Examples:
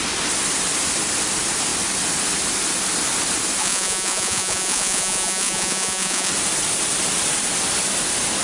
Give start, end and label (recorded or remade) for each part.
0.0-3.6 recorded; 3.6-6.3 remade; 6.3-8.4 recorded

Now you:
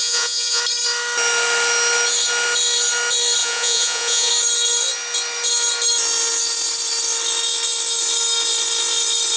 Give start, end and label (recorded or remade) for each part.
0.0-0.6 remade; 0.6-3.4 recorded; 3.4-4.3 remade; 4.3-9.4 recorded

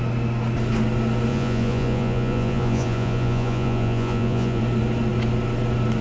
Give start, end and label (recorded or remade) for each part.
0.0-1.3 recorded; 1.3-4.6 remade; 4.6-6.0 recorded